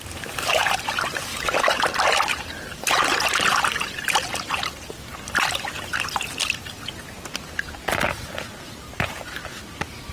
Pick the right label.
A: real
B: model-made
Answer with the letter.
A